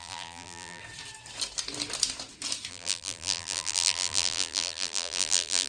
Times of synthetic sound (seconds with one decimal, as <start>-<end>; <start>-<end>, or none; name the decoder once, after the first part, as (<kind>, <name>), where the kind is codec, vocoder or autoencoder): 0.0-0.8 (vocoder, BigVGAN v2); 2.7-5.7

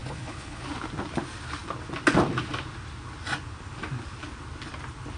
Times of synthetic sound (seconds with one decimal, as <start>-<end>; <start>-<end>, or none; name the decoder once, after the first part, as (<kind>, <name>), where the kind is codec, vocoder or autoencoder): 0.0-0.6 (codec, HILCodec)

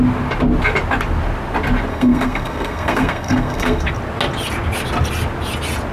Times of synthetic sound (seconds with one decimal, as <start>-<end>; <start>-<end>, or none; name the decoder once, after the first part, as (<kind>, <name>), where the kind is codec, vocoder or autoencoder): 1.9-3.9 (codec, SNAC)